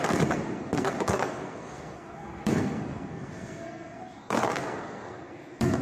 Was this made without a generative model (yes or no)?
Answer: no